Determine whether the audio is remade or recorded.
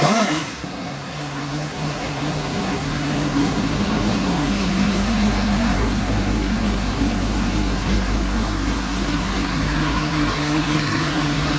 remade